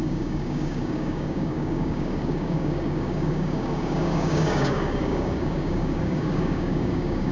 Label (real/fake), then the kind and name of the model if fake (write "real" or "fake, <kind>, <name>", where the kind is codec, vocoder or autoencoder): fake, codec, DAC